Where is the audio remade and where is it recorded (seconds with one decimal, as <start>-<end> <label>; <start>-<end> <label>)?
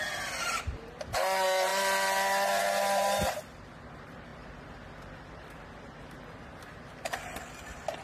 0.0-8.0 recorded